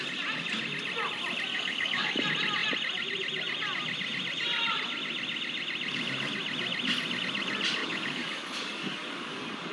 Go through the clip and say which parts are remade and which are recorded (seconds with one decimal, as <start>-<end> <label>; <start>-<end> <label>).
0.0-1.5 recorded; 1.5-2.2 remade; 2.2-7.8 recorded; 7.8-9.7 remade